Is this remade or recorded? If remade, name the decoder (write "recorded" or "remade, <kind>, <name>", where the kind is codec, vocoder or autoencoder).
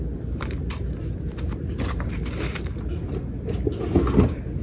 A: recorded